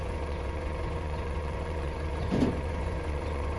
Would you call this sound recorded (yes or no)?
no